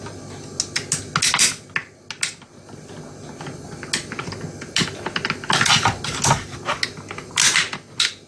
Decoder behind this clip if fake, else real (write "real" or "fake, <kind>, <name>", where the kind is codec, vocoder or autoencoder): real